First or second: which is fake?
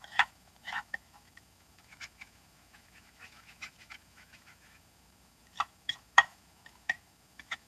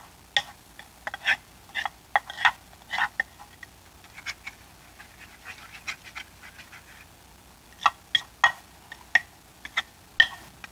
first